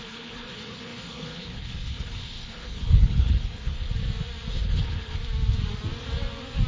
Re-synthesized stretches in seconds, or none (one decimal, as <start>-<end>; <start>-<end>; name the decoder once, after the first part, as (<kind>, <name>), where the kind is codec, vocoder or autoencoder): 0.0-3.9 (codec, HILCodec); 4.5-5.2